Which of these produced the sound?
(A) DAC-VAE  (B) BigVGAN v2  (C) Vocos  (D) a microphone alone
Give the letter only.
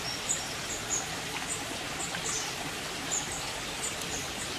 B